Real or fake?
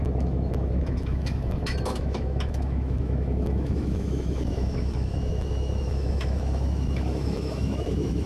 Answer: fake